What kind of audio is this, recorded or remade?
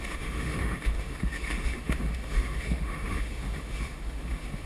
remade